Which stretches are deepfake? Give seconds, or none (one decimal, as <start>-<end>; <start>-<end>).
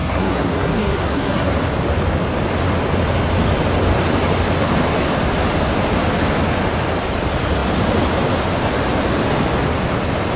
0.0-1.5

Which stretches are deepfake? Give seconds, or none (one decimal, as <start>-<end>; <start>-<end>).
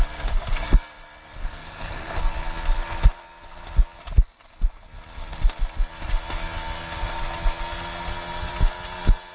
1.4-2.2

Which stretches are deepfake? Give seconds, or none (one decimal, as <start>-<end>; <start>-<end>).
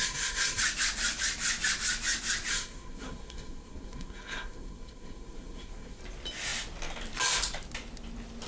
0.0-0.6; 2.5-6.0